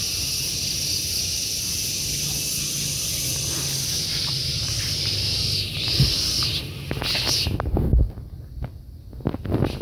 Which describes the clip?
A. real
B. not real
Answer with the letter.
A